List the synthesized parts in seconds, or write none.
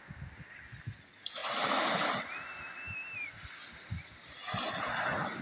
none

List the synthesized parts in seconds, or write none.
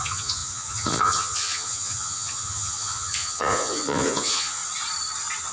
0.0-4.6